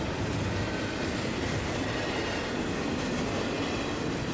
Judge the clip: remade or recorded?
recorded